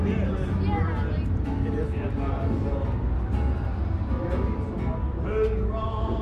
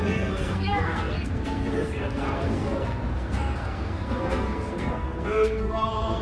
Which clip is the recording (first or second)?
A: first